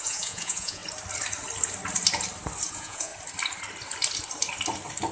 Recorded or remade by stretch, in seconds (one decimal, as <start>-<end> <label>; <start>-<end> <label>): 0.0-0.8 remade; 0.8-2.7 recorded; 2.7-3.1 remade; 3.1-5.1 recorded

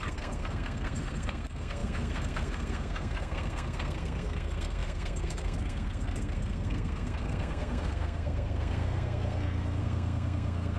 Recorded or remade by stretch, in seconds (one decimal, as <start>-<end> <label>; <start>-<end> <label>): 0.0-10.8 remade

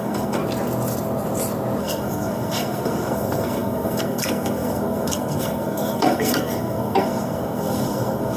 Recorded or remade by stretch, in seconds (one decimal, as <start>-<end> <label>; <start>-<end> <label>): 0.0-0.4 remade; 0.4-1.8 recorded; 1.8-8.4 remade

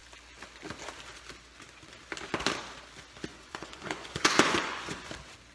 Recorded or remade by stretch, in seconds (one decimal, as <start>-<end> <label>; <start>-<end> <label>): 0.0-3.3 recorded; 3.3-5.1 remade; 5.1-5.5 recorded

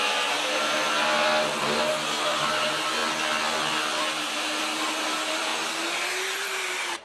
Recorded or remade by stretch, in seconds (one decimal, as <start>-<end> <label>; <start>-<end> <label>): 0.0-1.3 remade; 1.3-1.9 recorded; 1.9-3.0 remade; 3.0-4.0 recorded; 4.0-5.5 remade; 5.5-6.2 recorded; 6.2-7.0 remade

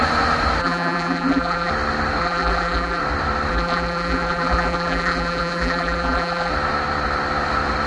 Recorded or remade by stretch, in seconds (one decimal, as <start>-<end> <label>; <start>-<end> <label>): 0.0-0.6 recorded; 0.6-1.7 remade; 1.7-2.2 recorded; 2.2-3.0 remade; 3.0-3.5 recorded; 3.5-6.5 remade; 6.5-7.9 recorded

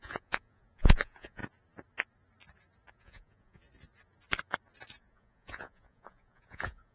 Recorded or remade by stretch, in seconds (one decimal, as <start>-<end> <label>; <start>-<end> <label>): 0.0-1.4 remade; 1.4-2.9 recorded; 2.9-3.6 remade; 3.6-5.0 recorded; 5.0-6.9 remade